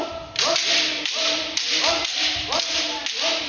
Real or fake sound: real